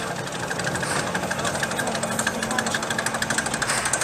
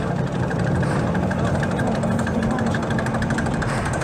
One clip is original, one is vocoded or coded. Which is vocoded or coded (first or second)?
second